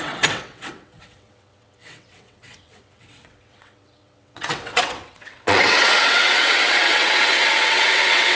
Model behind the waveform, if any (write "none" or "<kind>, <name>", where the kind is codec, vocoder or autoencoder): vocoder, WaveNeXt